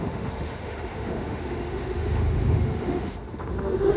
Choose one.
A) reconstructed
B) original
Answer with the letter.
A